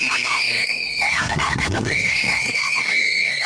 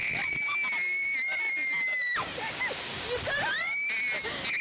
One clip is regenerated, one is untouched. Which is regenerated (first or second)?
first